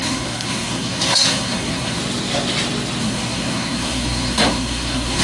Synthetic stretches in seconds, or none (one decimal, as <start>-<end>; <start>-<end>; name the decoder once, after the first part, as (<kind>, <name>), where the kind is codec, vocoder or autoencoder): 0.0-2.0 (codec, SNAC); 3.0-5.2